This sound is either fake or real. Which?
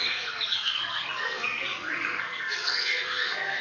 fake